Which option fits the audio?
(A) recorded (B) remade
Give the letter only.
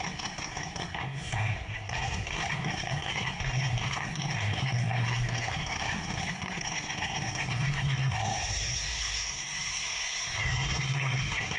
B